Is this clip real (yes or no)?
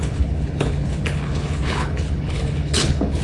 no